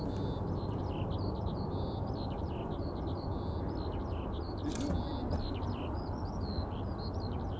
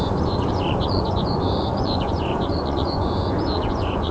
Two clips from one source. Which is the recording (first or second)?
first